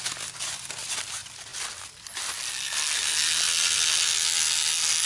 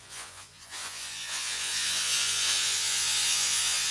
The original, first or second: first